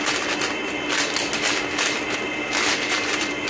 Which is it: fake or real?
real